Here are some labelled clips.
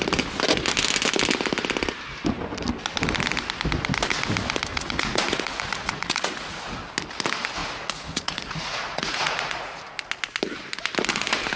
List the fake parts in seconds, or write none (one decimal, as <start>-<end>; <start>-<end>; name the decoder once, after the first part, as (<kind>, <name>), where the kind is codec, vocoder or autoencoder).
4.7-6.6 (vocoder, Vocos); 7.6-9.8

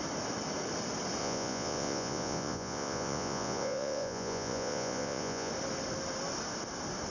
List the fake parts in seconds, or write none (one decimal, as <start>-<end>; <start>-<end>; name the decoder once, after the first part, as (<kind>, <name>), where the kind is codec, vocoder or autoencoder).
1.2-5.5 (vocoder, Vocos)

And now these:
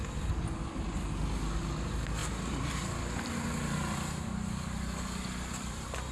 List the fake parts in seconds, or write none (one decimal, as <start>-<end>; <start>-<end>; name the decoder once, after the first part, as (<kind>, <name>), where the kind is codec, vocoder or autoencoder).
2.2-6.1 (vocoder, BigVGAN v2)